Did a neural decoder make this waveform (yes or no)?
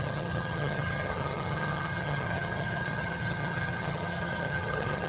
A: yes